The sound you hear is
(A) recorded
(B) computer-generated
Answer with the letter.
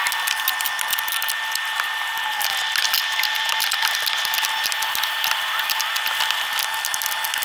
A